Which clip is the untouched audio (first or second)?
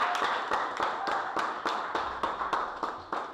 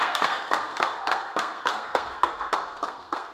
first